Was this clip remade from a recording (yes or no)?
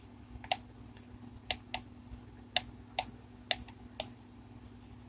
no